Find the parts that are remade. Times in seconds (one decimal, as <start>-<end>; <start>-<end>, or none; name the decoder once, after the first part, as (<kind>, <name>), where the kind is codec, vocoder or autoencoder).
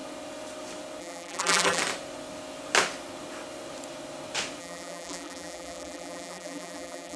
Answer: 1.0-1.8 (vocoder, BigVGAN v2); 4.6-7.2